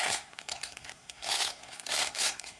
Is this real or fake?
fake